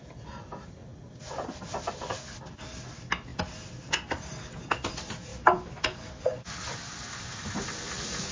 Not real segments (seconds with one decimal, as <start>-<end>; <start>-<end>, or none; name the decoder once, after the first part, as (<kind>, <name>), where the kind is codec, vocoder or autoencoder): 0.0-0.8 (vocoder, BigVGAN v2); 1.9-3.3; 4.6-8.3